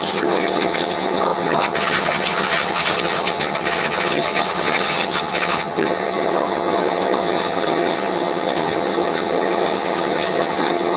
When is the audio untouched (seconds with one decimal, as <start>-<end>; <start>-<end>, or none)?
none